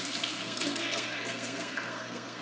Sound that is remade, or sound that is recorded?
remade